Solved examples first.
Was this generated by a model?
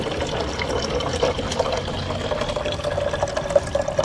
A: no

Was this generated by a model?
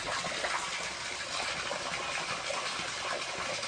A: no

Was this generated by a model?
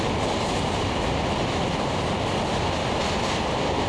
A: no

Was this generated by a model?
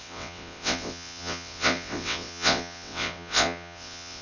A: yes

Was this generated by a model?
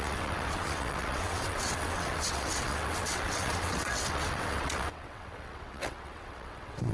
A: yes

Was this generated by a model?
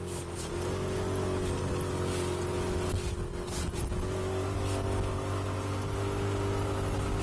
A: no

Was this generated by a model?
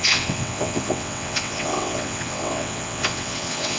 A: yes